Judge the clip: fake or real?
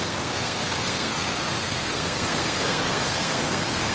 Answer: fake